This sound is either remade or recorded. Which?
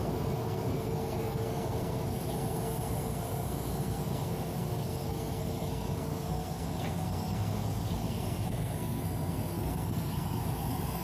remade